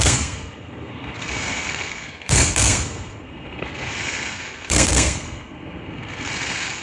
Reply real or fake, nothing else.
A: fake